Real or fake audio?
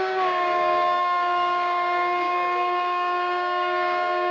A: fake